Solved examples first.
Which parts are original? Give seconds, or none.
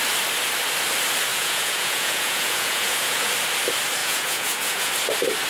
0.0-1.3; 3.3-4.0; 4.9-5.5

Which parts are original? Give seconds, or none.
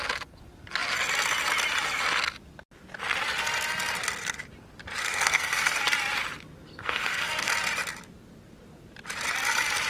0.0-5.0; 5.8-6.7; 7.5-9.9